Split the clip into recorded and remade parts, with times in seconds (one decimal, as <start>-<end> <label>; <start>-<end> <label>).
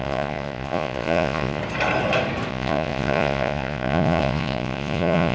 0.0-1.6 remade; 1.6-2.5 recorded; 2.5-5.3 remade